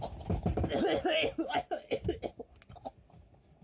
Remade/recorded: recorded